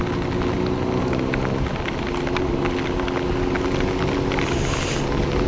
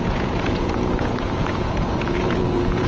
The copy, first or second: second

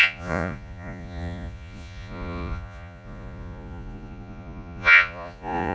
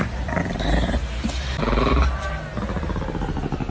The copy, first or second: first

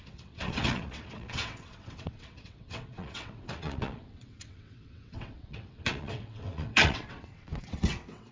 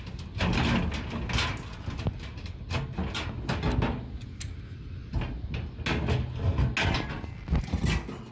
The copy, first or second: first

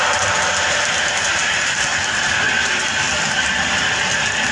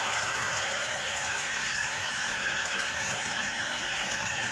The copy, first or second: second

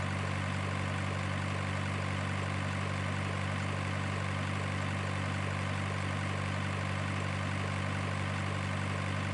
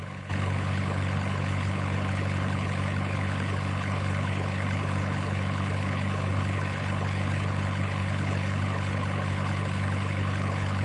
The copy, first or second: second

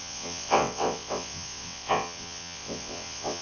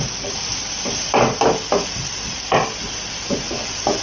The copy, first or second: first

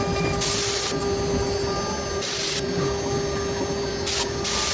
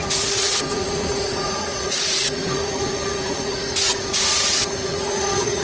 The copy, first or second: second